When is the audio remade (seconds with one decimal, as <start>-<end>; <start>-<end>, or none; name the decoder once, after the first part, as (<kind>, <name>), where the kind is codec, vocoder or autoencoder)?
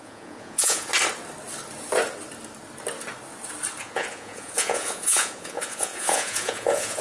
0.0-0.9 (vocoder, Vocos); 3.8-7.0